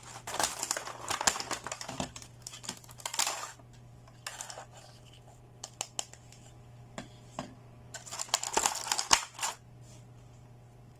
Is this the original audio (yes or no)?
yes